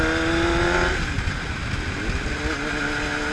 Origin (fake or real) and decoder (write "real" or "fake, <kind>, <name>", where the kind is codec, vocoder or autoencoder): real